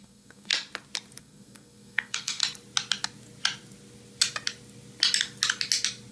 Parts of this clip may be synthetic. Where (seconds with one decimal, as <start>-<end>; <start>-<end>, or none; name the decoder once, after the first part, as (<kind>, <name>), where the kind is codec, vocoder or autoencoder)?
0.0-0.5 (codec, SNAC); 1.2-2.4